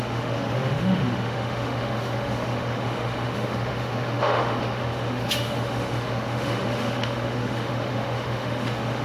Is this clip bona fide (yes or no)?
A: no